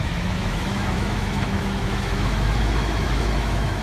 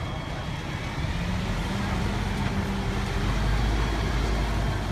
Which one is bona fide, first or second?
second